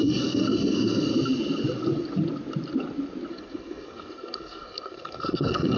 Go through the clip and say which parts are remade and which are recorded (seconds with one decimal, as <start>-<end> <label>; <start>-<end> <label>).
0.0-1.1 remade; 1.1-3.3 recorded; 3.3-5.8 remade

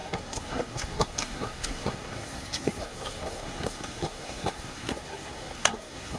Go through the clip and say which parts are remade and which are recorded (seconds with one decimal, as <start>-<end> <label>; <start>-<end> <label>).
0.0-6.2 remade